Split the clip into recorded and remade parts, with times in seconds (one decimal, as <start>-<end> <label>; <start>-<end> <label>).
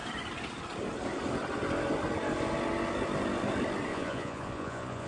0.0-3.9 recorded; 3.9-5.1 remade